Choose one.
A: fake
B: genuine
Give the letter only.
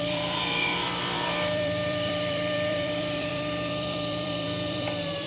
A